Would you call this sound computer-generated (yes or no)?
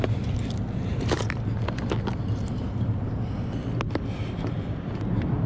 no